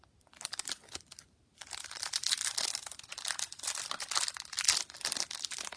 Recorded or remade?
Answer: recorded